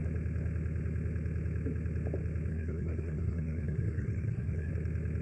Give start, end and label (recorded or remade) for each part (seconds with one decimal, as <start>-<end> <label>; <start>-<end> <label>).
0.0-2.5 recorded; 2.5-4.7 remade; 4.7-5.2 recorded